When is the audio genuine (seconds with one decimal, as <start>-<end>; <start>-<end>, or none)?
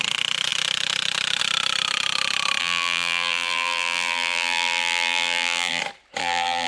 0.0-2.6; 5.8-6.2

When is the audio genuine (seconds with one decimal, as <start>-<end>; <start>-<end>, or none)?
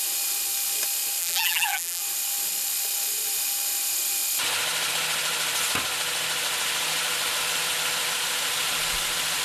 0.0-1.2; 2.0-9.4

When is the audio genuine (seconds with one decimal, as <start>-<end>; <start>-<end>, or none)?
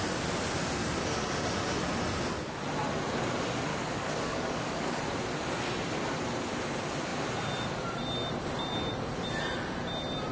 0.0-3.7; 5.0-10.3